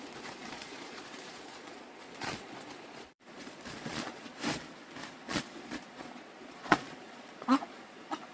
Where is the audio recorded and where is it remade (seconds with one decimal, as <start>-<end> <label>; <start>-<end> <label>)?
0.0-4.3 remade; 4.3-5.2 recorded; 5.2-8.3 remade

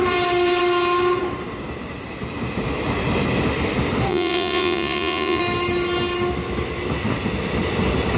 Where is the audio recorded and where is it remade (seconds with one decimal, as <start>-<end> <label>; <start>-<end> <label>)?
0.0-4.1 recorded; 4.1-5.4 remade; 5.4-8.2 recorded

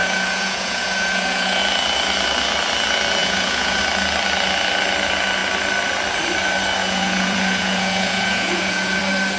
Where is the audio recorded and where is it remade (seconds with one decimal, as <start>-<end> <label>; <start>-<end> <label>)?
0.0-1.6 remade; 1.6-3.2 recorded; 3.2-3.8 remade; 3.8-6.8 recorded; 6.8-9.0 remade; 9.0-9.4 recorded

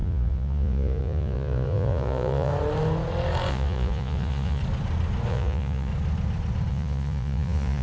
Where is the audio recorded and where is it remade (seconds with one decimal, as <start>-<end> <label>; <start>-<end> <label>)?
0.0-2.5 remade; 2.5-3.5 recorded; 3.5-4.6 remade; 4.6-5.3 recorded; 5.3-5.9 remade; 5.9-6.7 recorded; 6.7-7.8 remade

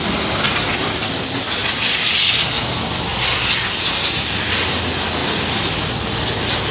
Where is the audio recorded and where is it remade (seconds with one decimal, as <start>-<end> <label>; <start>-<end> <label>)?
0.0-6.7 recorded